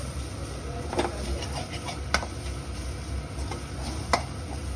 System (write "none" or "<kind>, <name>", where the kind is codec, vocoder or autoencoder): none